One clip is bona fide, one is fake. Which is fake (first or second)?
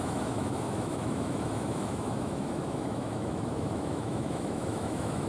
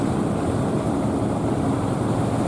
first